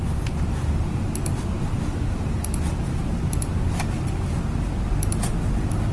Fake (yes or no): no